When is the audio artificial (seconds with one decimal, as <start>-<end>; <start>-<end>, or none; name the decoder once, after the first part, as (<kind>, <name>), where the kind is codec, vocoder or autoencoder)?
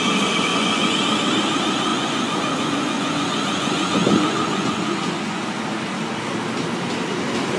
0.5-1.0 (vocoder, Vocos); 1.9-5.4